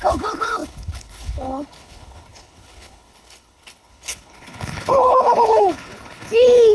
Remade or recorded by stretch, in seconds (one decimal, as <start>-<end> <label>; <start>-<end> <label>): 0.0-6.7 remade